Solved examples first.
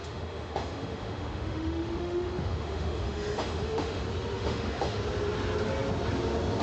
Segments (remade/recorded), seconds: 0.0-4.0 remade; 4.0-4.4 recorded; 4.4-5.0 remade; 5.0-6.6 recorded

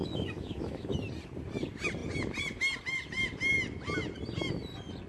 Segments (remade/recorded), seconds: 0.0-1.0 remade; 1.0-5.1 recorded

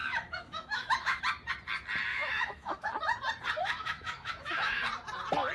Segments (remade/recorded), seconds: 0.0-1.2 remade; 1.2-2.1 recorded; 2.1-2.9 remade; 2.9-3.6 recorded; 3.6-4.8 remade; 4.8-5.5 recorded

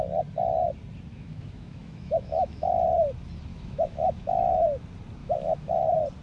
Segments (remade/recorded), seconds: 0.0-1.1 recorded; 1.1-2.7 remade; 2.7-3.5 recorded; 3.5-4.5 remade; 4.5-5.2 recorded; 5.2-5.8 remade; 5.8-6.2 recorded